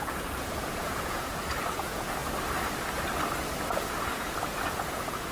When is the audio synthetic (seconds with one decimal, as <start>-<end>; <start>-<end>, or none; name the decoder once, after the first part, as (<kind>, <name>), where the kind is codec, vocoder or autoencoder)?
0.0-2.2 (vocoder, Vocos); 3.7-5.3